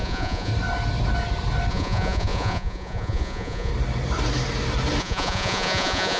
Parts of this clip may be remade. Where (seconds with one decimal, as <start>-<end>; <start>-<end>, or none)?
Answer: 0.0-0.5; 1.7-3.7; 5.0-6.2